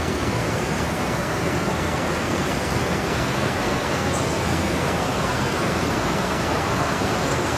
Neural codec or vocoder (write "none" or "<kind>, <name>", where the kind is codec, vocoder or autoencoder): codec, SNAC